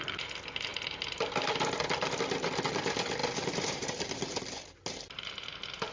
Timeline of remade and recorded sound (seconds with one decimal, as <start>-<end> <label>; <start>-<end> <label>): 0.0-3.2 recorded; 3.2-4.4 remade; 4.4-5.9 recorded